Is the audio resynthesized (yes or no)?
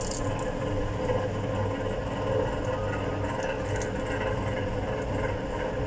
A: no